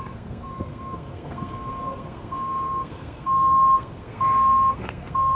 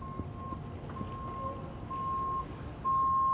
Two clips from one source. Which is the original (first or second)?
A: second